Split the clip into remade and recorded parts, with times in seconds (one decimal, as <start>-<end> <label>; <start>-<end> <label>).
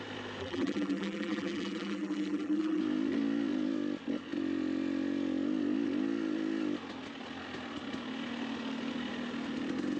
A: 0.0-0.4 recorded; 0.4-2.8 remade; 2.8-10.0 recorded